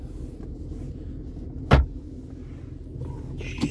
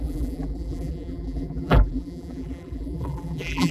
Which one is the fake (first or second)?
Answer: second